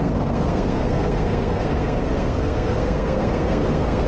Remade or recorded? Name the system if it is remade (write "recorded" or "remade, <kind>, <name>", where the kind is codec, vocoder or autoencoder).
remade, codec, SNAC